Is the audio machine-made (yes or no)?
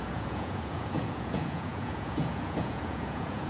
yes